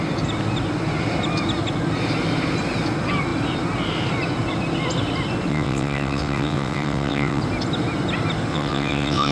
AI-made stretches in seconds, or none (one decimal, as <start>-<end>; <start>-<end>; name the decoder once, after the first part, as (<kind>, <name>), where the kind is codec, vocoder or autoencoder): 5.5-7.4 (vocoder, WaveNeXt); 8.5-9.3

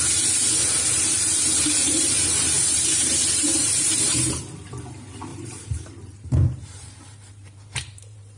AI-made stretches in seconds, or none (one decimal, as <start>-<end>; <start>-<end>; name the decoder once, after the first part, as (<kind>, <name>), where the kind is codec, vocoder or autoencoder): 1.8-4.4 (vocoder, BigVGAN v2); 5.3-8.4

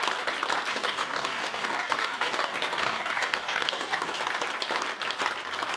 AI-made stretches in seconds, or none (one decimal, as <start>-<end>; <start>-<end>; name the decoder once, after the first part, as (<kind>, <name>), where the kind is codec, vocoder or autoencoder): 0.7-4.2 (codec, DAC)

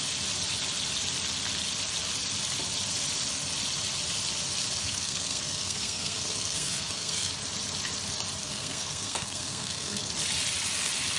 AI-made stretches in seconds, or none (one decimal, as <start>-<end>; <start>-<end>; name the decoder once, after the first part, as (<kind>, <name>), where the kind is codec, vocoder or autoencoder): 4.8-7.3 (codec, SNAC); 8.4-10.1

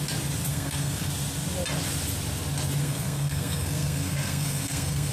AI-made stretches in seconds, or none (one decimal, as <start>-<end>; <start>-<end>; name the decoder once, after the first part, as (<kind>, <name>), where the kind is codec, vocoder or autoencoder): 0.5-1.1 (codec, SNAC); 2.8-5.1

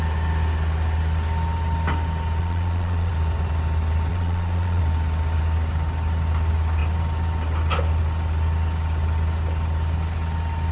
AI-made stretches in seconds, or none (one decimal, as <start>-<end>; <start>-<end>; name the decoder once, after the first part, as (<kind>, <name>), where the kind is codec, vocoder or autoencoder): 2.4-3.1 (vocoder, Vocos); 4.1-4.8

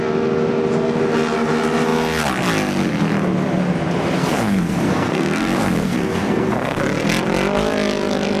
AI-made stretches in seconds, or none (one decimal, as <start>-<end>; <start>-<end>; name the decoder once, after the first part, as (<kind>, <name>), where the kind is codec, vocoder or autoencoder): 4.2-6.8 (codec, SNAC)

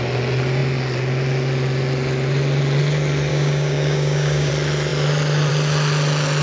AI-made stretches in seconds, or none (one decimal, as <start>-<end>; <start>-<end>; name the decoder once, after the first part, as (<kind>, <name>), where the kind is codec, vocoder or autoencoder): 3.3-4.5 (codec, DAC)